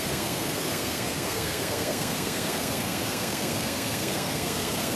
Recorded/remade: remade